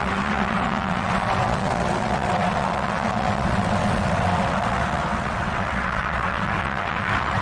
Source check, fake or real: fake